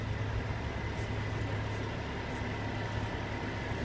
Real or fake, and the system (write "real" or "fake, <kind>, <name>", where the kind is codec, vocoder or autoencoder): real